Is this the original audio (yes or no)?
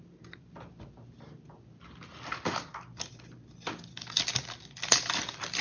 yes